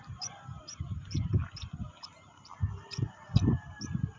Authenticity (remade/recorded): recorded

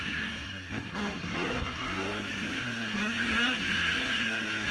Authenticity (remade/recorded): remade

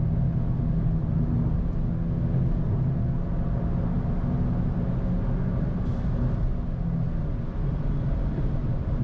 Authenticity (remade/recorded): recorded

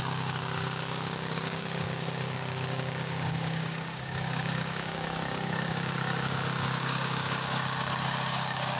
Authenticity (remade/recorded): remade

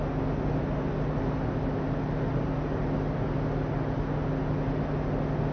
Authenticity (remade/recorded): recorded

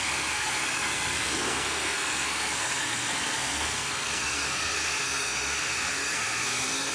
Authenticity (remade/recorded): remade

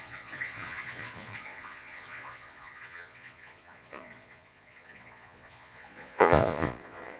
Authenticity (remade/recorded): remade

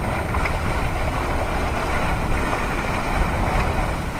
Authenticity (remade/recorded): recorded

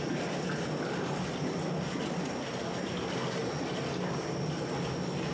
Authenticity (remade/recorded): recorded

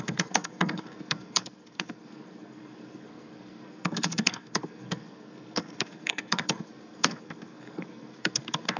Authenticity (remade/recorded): remade